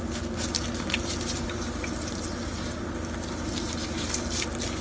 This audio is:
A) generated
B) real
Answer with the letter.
B